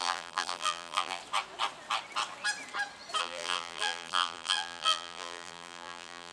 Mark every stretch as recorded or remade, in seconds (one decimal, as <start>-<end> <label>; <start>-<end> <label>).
0.0-1.2 remade; 1.2-3.2 recorded; 3.2-6.3 remade

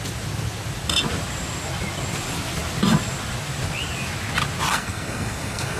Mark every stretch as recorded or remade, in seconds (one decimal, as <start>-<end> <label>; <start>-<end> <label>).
0.0-4.7 recorded; 4.7-5.8 remade

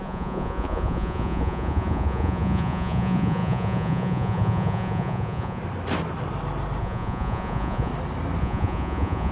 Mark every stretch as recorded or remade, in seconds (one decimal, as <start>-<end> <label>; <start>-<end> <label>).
0.0-5.6 remade; 5.6-6.8 recorded; 6.8-7.9 remade; 7.9-8.4 recorded; 8.4-9.3 remade

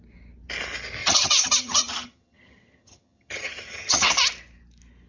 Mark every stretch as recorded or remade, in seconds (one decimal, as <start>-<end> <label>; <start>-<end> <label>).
0.0-1.0 recorded; 1.0-4.1 remade; 4.1-5.1 recorded

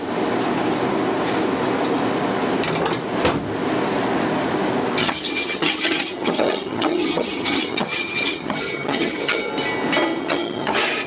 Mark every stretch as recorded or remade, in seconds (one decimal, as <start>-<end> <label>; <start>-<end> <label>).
0.0-5.0 recorded; 5.0-9.5 remade; 9.5-10.2 recorded; 10.2-10.7 remade; 10.7-11.1 recorded

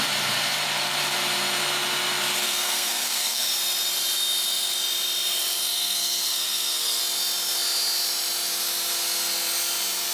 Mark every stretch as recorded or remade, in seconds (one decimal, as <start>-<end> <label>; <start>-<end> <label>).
0.0-2.4 recorded; 2.4-3.5 remade; 3.5-5.6 recorded; 5.6-7.0 remade; 7.0-10.1 recorded

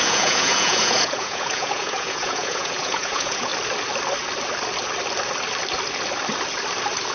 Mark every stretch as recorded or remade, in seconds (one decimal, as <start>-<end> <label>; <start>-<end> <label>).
0.0-3.5 remade; 3.5-7.1 recorded

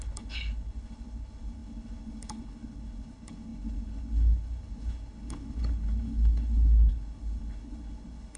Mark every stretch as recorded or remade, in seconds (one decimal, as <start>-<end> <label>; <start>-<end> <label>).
0.0-8.4 remade